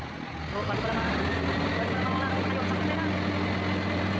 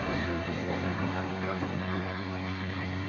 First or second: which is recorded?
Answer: first